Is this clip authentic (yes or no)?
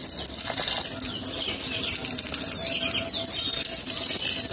yes